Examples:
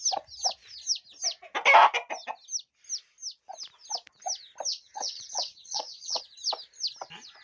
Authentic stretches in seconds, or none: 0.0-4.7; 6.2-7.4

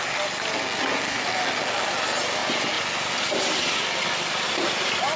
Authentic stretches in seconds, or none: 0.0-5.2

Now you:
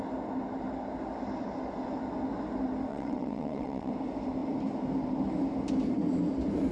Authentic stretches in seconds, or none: 0.0-2.9; 3.9-6.7

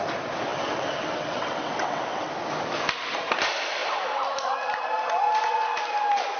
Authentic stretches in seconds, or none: 0.0-0.5; 2.3-6.4